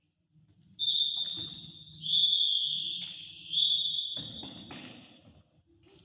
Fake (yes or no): no